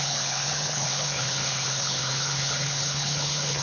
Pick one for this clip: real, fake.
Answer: fake